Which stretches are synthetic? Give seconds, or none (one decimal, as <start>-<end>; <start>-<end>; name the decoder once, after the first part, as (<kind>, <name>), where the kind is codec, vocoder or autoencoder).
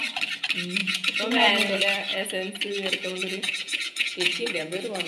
0.8-1.5 (vocoder, Vocos); 2.1-5.1